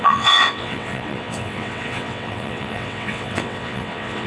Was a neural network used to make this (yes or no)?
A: yes